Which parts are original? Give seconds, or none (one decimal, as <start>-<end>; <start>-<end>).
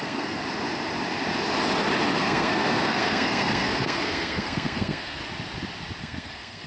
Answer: 0.4-2.2; 5.2-6.0